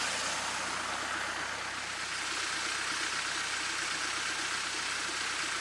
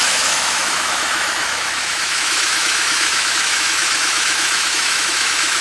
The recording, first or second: first